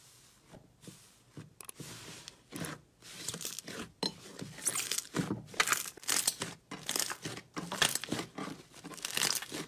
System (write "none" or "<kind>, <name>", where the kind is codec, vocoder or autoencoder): none